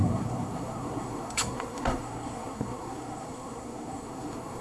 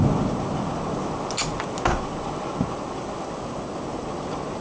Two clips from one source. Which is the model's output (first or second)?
first